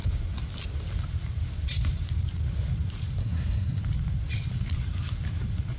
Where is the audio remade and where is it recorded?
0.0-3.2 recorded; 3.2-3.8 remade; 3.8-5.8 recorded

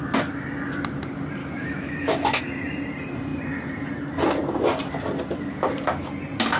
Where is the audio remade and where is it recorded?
0.0-1.4 recorded; 1.4-2.4 remade; 2.4-6.6 recorded